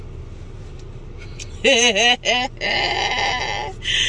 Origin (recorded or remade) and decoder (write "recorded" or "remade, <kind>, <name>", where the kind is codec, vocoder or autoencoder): recorded